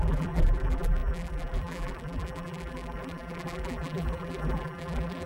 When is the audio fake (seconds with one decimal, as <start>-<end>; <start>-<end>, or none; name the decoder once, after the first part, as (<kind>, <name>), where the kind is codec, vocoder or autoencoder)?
0.0-5.3 (vocoder, BigVGAN v2)